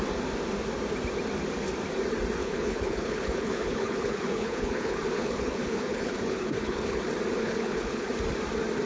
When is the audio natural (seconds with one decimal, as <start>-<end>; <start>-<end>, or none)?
0.0-2.4; 7.0-7.4; 8.1-8.9